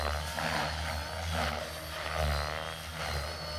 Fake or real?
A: real